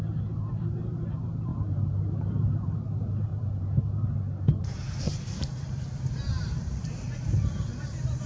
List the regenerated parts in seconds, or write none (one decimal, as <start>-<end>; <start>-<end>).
0.0-1.5; 2.2-3.3; 5.0-8.3

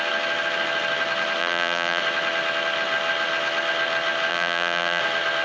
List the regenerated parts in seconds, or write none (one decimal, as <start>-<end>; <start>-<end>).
1.4-2.0; 4.3-5.0